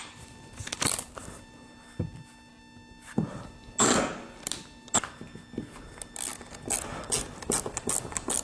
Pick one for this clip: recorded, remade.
recorded